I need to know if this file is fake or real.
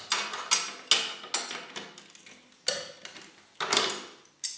real